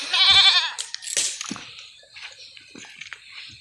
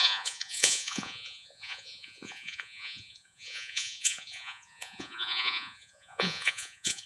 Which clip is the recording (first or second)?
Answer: first